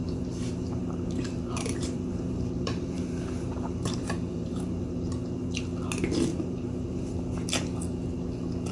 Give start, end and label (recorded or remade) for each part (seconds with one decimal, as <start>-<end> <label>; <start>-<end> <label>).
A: 0.0-4.8 remade; 4.8-6.3 recorded; 6.3-7.1 remade; 7.1-8.7 recorded